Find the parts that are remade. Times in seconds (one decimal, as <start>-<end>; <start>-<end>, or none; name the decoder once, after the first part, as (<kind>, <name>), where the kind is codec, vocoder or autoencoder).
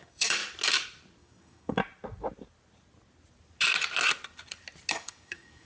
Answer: 0.0-0.4 (codec, DAC); 1.2-1.8; 4.9-5.7